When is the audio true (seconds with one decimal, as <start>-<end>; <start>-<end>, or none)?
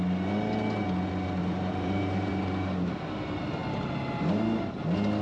0.0-1.4; 2.3-5.2